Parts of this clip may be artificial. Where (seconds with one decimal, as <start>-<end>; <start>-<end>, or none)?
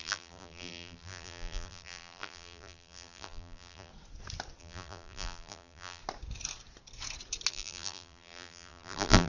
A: 0.0-3.9; 4.6-6.0; 7.5-9.3